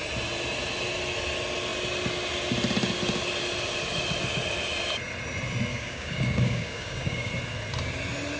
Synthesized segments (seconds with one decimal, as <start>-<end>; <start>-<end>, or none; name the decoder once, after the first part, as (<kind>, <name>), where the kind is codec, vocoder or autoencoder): 5.7-7.3 (codec, DAC)

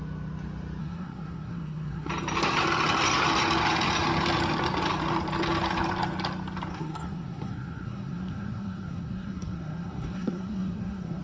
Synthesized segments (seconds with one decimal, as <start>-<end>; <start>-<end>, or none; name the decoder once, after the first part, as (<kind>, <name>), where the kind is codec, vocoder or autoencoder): 0.8-2.1 (codec, SNAC); 6.7-11.2

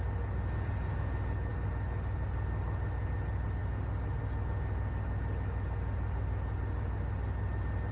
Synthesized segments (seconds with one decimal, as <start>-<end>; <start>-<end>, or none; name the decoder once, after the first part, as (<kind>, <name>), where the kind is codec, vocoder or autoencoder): none

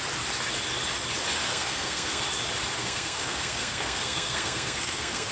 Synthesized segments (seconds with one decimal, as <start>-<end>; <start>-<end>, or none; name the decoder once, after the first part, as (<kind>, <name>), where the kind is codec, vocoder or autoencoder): 1.5-2.2 (codec, SNAC); 2.8-5.3

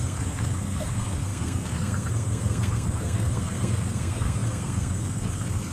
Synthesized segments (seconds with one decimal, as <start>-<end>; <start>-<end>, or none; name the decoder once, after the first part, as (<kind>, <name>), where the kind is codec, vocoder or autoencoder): 0.0-5.7 (codec, SNAC)

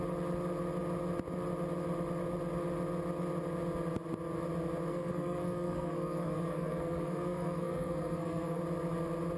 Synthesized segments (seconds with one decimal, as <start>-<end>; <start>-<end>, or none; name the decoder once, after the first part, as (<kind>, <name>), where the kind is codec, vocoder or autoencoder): 4.9-8.6 (codec, SNAC)

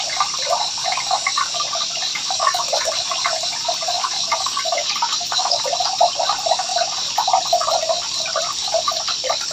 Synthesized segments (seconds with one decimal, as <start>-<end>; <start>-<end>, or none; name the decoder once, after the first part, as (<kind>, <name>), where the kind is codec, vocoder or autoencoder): 2.1-2.9 (codec, DAC); 4.0-5.6

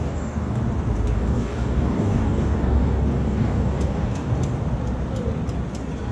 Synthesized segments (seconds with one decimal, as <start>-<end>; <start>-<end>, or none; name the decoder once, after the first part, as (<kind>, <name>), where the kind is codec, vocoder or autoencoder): 0.0-0.6 (codec, DAC); 1.1-4.3